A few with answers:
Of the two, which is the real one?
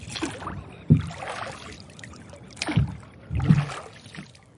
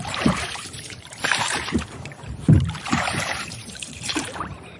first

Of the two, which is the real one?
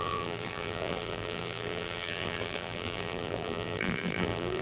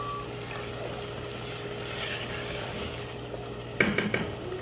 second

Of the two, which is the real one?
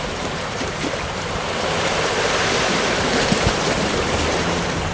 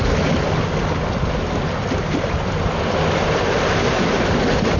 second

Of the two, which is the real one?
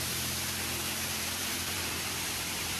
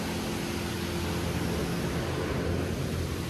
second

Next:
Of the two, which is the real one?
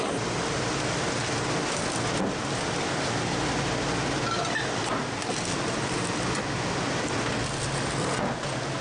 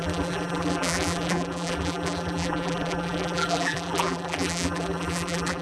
first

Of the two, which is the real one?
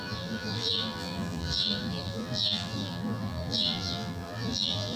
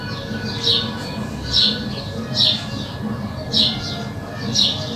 second